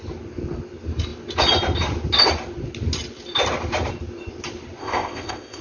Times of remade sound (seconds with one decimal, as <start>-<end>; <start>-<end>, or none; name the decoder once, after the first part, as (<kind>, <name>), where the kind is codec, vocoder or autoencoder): 4.8-5.6 (codec, ZipCodec)